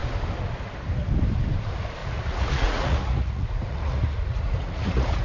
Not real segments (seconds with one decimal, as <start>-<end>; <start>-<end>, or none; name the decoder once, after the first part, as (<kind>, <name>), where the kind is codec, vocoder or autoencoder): 2.0-5.2 (vocoder, Vocos)